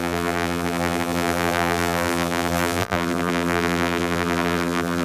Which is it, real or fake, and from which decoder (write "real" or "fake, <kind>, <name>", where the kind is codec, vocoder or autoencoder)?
fake, vocoder, BigVGAN v2